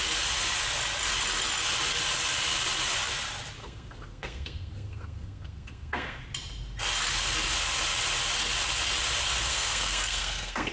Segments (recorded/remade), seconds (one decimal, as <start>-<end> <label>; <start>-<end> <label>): 0.0-3.6 recorded; 3.6-6.2 remade; 6.2-9.5 recorded; 9.5-10.7 remade